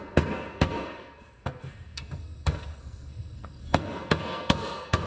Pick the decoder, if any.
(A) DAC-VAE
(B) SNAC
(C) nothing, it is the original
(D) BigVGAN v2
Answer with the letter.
B